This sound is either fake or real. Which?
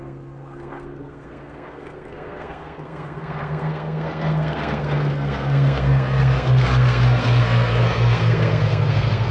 fake